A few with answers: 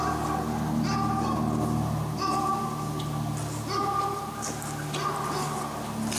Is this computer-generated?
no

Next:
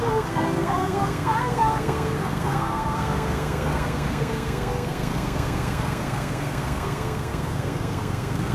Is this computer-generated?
yes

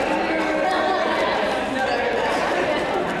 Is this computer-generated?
no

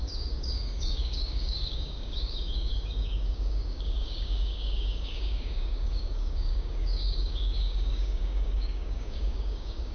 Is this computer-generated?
yes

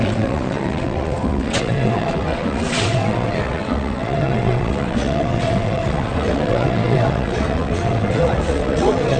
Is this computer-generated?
yes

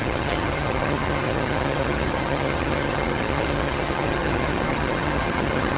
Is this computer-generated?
yes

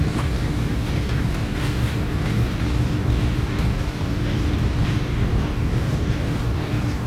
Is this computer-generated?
yes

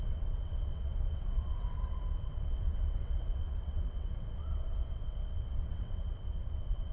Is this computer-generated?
yes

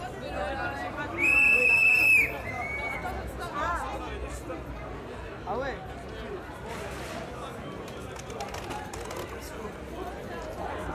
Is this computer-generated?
no